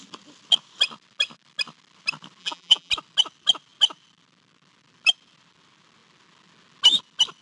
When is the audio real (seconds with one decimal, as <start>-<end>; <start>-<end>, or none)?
0.0-2.4; 2.9-7.4